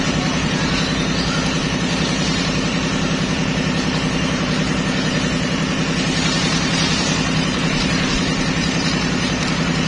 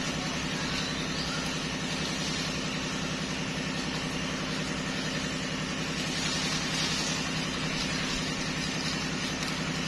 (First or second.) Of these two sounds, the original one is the second